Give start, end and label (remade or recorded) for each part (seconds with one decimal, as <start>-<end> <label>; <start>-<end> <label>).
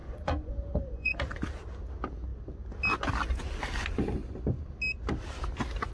0.0-1.1 remade; 1.1-5.9 recorded